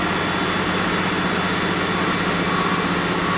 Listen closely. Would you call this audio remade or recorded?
recorded